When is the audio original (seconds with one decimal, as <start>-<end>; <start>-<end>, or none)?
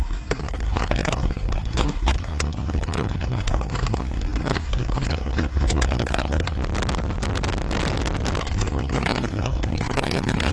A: 6.6-8.4